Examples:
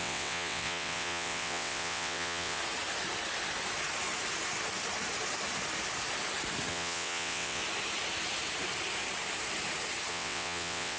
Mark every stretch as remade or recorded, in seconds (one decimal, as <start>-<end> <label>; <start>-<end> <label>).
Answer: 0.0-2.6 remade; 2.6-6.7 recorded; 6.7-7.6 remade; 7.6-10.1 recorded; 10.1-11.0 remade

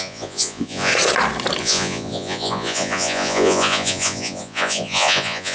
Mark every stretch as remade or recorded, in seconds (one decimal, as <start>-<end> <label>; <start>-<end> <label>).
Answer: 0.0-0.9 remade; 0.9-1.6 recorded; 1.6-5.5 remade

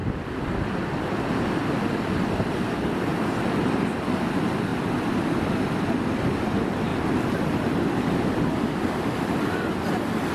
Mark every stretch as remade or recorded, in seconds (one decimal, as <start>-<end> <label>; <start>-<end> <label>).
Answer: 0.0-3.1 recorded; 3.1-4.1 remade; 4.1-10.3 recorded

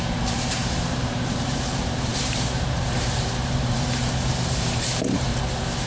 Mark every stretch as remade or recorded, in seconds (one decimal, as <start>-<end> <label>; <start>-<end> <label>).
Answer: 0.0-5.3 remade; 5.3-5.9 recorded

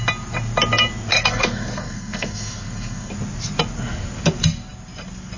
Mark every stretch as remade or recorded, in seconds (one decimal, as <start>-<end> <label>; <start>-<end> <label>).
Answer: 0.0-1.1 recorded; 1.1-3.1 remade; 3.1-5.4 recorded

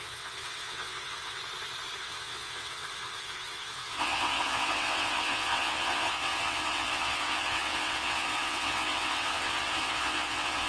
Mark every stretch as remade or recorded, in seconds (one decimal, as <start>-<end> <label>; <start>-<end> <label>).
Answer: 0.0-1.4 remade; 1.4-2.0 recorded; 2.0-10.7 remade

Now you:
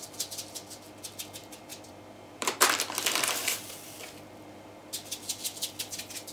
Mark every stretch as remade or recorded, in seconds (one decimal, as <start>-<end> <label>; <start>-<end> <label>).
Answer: 0.0-1.7 recorded; 1.7-4.7 remade; 4.7-6.3 recorded